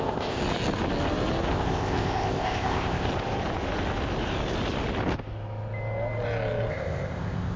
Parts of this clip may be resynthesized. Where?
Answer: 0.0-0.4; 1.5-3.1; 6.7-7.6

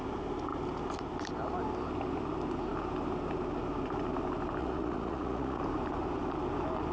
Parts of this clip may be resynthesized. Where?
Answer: 4.6-5.6

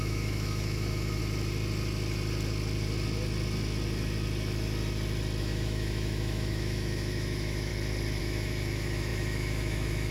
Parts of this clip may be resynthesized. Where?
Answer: 0.0-1.2; 5.4-7.7; 8.2-10.1

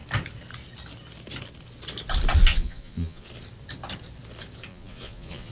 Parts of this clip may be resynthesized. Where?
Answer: 2.5-3.3; 4.7-5.5

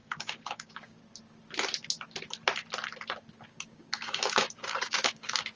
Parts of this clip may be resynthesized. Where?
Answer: 0.0-1.0; 3.5-5.6

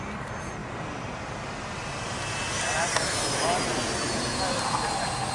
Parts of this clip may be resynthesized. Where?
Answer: none

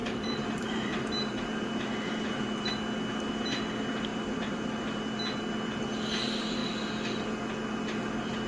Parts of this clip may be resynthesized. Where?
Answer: 0.0-2.7; 4.1-5.0